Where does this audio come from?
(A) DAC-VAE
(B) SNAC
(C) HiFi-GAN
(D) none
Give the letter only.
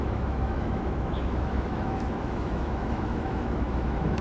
A